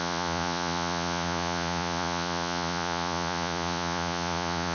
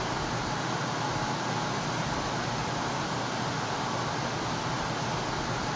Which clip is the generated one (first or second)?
first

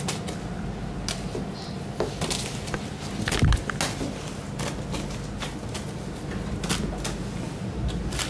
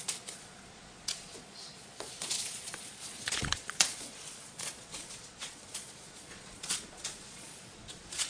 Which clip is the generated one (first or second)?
second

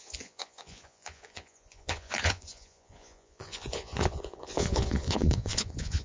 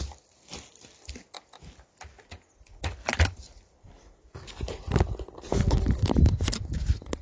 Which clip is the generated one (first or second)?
first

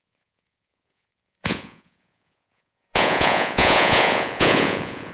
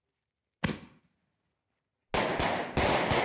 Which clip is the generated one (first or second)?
first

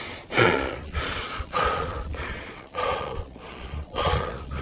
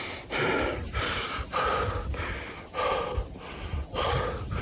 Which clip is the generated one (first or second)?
first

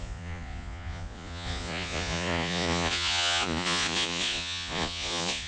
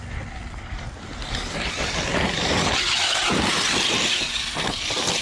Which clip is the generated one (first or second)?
first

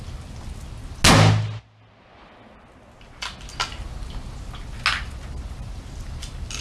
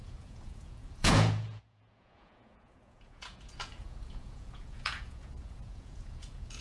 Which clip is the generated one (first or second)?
second